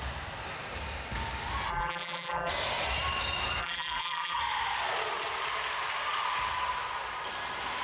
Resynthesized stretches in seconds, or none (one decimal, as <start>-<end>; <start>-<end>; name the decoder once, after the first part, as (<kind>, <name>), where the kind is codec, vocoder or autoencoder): 1.7-2.5 (vocoder, BigVGAN v2); 3.6-4.4